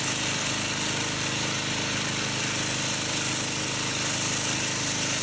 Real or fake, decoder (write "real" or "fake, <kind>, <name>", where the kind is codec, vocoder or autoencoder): real